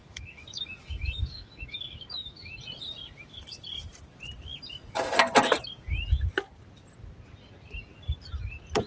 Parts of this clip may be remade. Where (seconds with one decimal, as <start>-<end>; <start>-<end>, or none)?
0.0-2.6